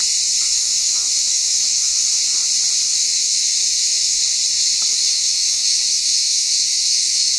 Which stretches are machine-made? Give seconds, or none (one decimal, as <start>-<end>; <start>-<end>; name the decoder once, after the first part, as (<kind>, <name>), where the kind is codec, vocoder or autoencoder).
0.5-2.2 (autoencoder, DAC-VAE); 2.9-4.2; 4.9-7.4